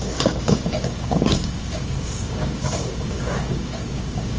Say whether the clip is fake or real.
fake